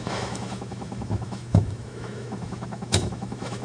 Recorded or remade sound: remade